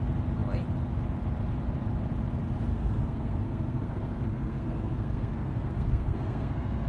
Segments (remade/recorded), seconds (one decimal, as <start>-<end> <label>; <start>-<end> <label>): 0.0-2.7 recorded; 2.7-6.9 remade